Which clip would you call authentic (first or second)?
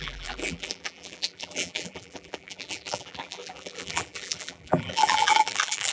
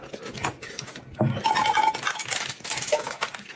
second